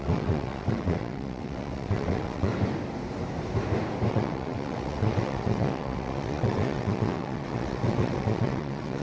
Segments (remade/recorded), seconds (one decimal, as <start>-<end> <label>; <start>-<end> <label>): 0.0-2.5 remade; 2.5-4.1 recorded; 4.1-9.0 remade